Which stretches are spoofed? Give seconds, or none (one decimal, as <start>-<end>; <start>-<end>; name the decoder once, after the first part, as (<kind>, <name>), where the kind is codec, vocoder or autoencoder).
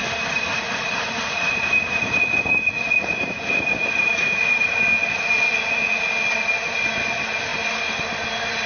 0.5-4.8 (vocoder, Vocos)